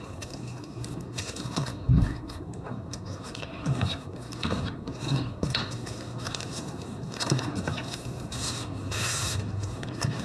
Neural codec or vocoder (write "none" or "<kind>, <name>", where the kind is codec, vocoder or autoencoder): codec, SNAC